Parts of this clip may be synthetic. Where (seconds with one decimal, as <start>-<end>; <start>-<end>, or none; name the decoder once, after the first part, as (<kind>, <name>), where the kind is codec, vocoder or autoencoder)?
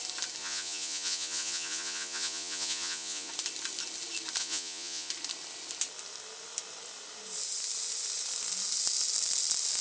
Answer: 0.4-3.3 (vocoder, Vocos); 4.4-5.1